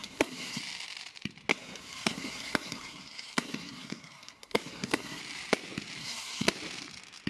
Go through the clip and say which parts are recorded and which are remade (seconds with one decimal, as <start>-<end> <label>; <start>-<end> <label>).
0.0-0.6 remade; 0.6-1.5 recorded; 1.5-5.2 remade; 5.2-6.0 recorded; 6.0-6.5 remade; 6.5-7.3 recorded